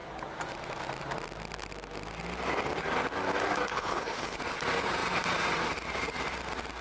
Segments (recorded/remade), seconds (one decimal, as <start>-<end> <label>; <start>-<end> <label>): 0.0-3.7 recorded; 3.7-4.4 remade; 4.4-6.8 recorded